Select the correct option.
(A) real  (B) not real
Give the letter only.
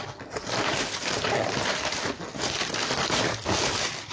A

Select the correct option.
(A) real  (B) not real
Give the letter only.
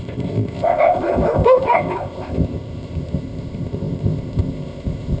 B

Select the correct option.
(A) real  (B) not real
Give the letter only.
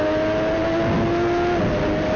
A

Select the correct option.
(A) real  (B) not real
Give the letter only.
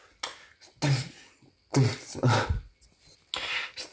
A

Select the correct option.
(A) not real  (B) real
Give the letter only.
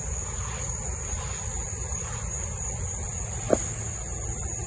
B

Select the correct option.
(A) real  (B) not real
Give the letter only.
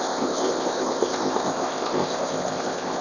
B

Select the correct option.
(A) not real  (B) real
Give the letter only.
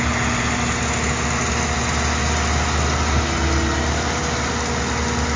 B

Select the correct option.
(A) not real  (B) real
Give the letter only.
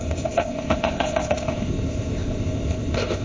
A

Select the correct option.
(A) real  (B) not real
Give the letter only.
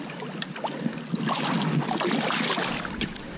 A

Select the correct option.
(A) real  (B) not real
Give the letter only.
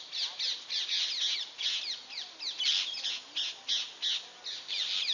A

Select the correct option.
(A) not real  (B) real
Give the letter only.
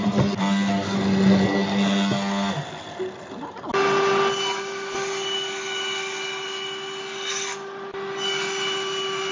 B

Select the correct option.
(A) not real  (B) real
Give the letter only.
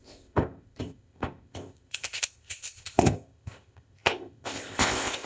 A